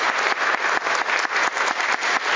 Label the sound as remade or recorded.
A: recorded